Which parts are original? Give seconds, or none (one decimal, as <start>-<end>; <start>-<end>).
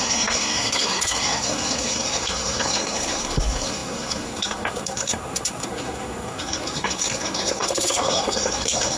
none